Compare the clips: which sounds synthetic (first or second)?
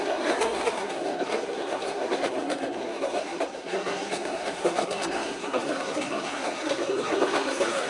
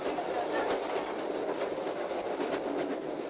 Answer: first